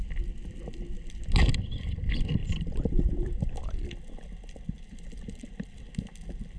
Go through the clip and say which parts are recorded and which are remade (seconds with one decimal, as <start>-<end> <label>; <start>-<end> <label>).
0.0-2.4 recorded; 2.4-3.6 remade; 3.6-6.6 recorded